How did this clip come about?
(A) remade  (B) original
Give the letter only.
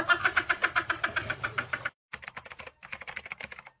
A